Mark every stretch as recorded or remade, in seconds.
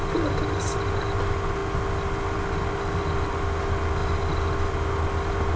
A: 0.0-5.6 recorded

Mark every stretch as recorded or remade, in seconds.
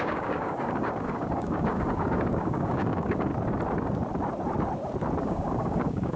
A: 0.0-3.3 remade; 3.3-5.2 recorded; 5.2-6.2 remade